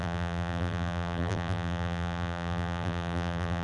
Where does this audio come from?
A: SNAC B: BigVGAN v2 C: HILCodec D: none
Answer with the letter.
B